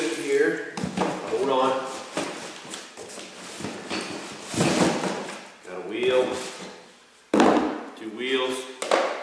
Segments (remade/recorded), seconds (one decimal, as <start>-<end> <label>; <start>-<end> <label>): 0.0-9.2 recorded